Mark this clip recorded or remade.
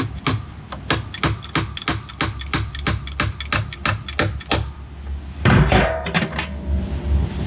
recorded